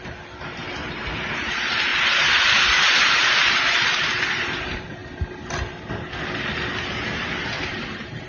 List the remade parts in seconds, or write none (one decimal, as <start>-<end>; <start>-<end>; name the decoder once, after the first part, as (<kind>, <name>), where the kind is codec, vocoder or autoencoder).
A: 0.0-1.9 (vocoder, BigVGAN v2); 2.6-5.0; 7.6-8.3